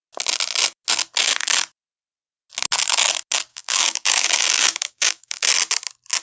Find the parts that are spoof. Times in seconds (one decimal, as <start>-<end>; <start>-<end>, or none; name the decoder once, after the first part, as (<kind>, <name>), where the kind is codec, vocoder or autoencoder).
3.5-5.5 (codec, DAC)

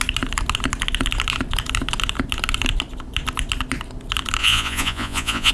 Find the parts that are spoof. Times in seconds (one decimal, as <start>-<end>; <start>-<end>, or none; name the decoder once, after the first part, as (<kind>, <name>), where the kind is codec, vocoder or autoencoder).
4.4-5.5 (vocoder, Vocos)

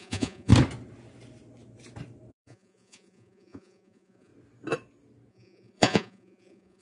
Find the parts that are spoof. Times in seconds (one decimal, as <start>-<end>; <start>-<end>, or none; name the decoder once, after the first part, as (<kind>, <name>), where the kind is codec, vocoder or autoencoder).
0.0-0.5 (vocoder, Vocos); 2.3-4.3; 5.3-6.8

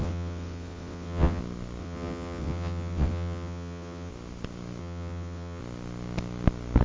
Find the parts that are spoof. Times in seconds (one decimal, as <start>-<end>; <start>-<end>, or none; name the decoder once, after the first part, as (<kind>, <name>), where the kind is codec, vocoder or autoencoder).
0.0-1.4 (vocoder, WaveNeXt); 1.8-4.1; 4.8-5.6

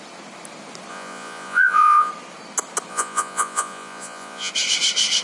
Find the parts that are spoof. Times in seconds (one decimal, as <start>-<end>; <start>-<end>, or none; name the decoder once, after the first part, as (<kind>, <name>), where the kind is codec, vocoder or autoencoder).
0.9-2.1 (vocoder, Vocos); 2.9-4.5

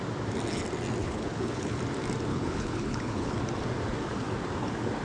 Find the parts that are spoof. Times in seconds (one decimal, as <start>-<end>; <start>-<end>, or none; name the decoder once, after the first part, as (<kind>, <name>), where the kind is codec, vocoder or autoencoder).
1.0-1.8 (codec, HILCodec); 2.3-3.4

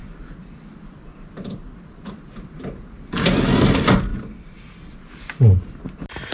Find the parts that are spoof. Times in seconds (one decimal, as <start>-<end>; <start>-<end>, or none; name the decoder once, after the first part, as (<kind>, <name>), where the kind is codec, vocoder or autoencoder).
none